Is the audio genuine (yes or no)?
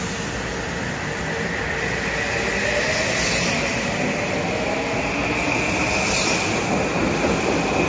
yes